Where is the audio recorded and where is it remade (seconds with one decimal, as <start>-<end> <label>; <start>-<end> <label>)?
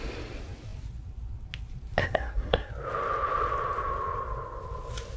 0.0-2.0 recorded; 2.0-2.7 remade; 2.7-5.2 recorded